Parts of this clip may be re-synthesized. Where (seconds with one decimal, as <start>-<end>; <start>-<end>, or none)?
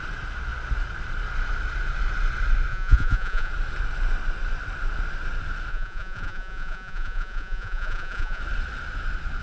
2.7-3.5; 5.7-8.4